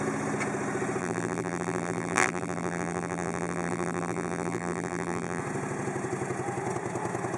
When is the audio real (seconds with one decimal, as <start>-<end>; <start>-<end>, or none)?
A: 0.0-1.0; 5.4-7.4